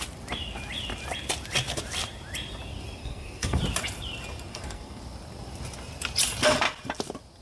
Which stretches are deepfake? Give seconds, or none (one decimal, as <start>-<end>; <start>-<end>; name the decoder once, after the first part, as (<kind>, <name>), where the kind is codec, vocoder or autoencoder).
3.0-3.6 (codec, SNAC); 4.5-5.0